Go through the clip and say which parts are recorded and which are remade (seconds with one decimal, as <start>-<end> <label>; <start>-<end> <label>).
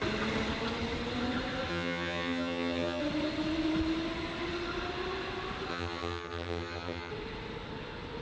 0.0-1.7 recorded; 1.7-3.0 remade; 3.0-5.7 recorded; 5.7-7.1 remade; 7.1-8.2 recorded